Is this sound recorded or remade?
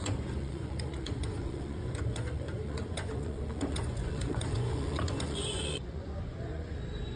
remade